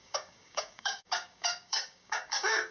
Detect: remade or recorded remade